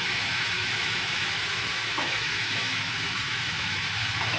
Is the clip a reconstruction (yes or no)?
yes